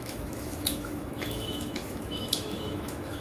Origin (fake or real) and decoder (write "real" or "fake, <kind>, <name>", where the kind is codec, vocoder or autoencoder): fake, autoencoder, DAC-VAE